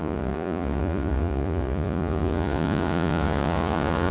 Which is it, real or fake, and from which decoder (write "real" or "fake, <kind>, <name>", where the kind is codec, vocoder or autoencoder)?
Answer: fake, vocoder, Vocos